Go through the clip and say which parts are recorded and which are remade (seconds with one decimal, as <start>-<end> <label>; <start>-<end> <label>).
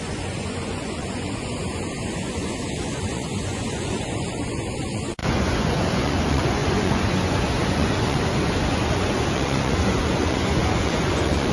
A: 0.0-11.5 remade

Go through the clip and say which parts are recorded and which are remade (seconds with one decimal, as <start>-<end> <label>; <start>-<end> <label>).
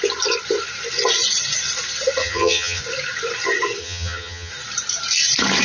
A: 0.0-2.2 recorded; 2.2-2.8 remade; 2.8-3.8 recorded; 3.8-4.5 remade; 4.5-5.6 recorded